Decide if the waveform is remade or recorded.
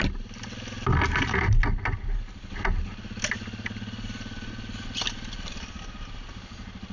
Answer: recorded